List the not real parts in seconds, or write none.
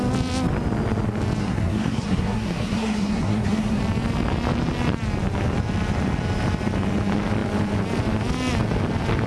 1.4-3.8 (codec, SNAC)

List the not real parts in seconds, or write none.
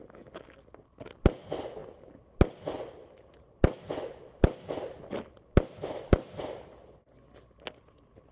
none